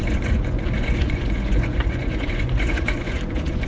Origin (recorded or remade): remade